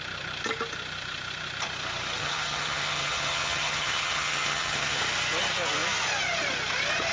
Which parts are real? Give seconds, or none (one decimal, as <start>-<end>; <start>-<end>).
0.0-2.2; 5.0-7.1